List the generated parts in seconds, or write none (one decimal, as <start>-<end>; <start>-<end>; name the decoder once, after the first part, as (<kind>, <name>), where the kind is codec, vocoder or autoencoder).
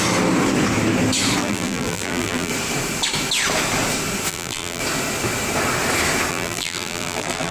1.4-2.5 (vocoder, BigVGAN v2); 4.3-4.8; 6.3-7.5